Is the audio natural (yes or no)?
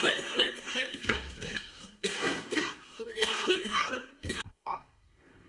no